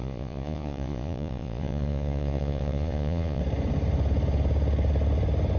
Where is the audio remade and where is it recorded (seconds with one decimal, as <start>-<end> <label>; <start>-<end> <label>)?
0.0-3.4 remade; 3.4-5.6 recorded